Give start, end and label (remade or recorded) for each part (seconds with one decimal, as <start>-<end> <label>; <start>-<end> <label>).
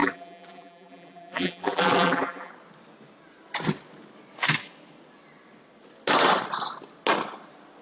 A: 0.0-2.5 remade; 2.5-7.8 recorded